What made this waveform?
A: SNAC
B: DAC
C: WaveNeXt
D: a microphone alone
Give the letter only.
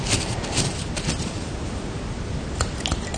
D